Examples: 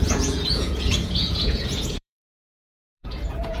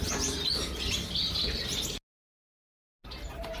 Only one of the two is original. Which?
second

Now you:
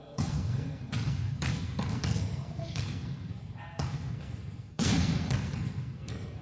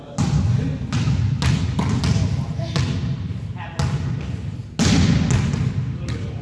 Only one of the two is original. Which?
second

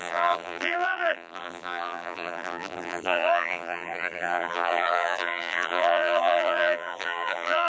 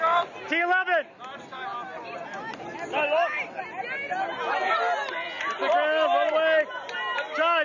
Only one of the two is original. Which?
second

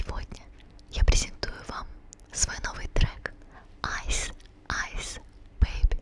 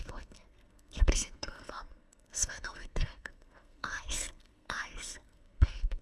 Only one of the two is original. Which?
first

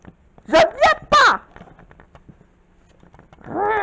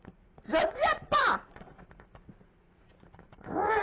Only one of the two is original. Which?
first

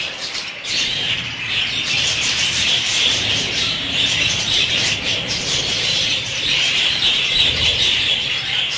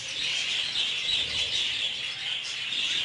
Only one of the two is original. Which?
second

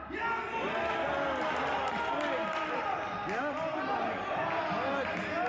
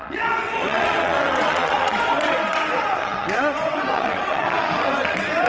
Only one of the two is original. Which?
first